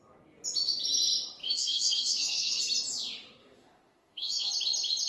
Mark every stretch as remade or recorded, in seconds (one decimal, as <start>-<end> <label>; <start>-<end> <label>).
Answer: 0.0-1.4 recorded; 1.4-2.6 remade; 2.6-3.4 recorded; 3.4-4.5 remade; 4.5-5.1 recorded